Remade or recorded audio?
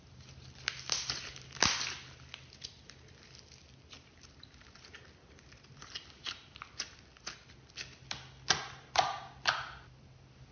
recorded